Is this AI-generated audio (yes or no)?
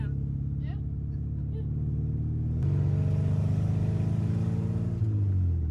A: no